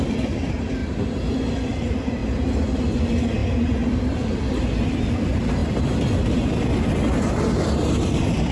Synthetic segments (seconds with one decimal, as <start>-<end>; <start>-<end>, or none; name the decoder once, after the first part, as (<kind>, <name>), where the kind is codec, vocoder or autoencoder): 0.0-0.8 (vocoder, BigVGAN v2); 1.3-2.2; 3.0-8.5